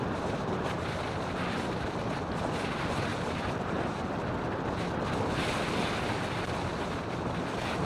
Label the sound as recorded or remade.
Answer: recorded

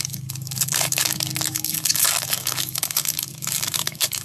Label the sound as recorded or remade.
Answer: remade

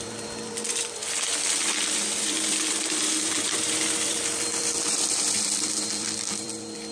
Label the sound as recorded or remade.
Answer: remade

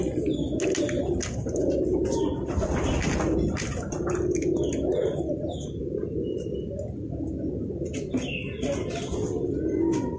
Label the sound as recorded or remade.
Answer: recorded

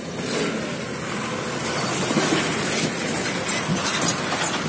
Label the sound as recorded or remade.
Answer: recorded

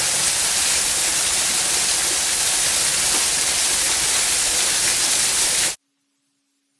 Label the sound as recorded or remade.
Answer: recorded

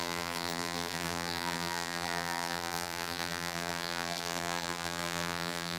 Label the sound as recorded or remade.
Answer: remade